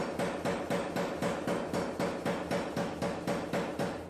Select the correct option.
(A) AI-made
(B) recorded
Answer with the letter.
B